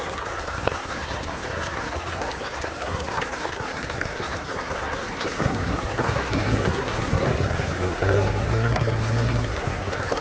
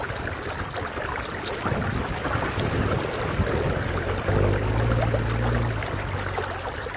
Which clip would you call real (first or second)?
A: second